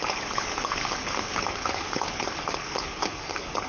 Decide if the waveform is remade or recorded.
remade